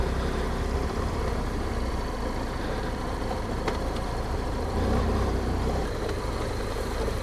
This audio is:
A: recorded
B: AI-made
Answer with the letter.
B